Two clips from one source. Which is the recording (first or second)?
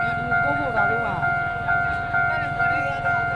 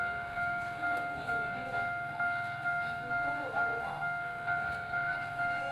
first